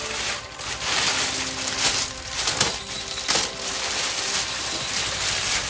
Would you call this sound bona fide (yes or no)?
yes